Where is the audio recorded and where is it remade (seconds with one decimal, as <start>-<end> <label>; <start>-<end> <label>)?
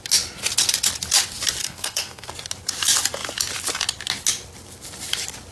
0.0-1.6 recorded; 1.6-2.3 remade; 2.3-5.5 recorded